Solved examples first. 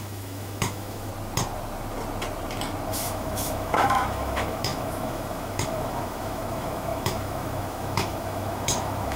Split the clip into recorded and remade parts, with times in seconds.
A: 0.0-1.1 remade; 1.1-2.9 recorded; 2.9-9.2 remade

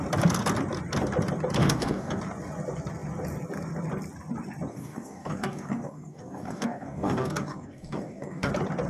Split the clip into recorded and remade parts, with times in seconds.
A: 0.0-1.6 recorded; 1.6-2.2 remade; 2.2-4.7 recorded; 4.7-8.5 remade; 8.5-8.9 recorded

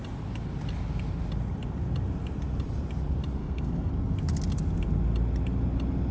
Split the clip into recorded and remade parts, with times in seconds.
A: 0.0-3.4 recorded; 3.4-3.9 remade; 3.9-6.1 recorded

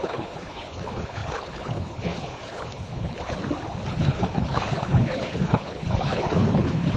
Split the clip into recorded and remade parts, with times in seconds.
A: 0.0-3.4 remade; 3.4-3.9 recorded; 3.9-7.0 remade